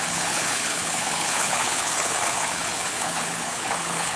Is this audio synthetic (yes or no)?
yes